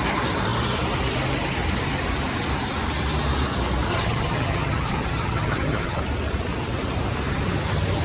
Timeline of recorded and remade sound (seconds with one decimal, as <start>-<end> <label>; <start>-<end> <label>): 0.0-3.9 recorded; 3.9-6.0 remade; 6.0-8.0 recorded